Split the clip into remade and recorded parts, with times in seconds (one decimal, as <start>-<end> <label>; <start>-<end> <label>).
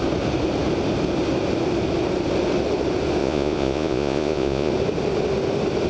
0.0-3.2 recorded; 3.2-4.7 remade; 4.7-5.9 recorded